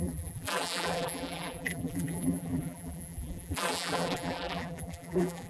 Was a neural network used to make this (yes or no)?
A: yes